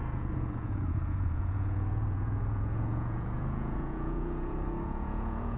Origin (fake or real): fake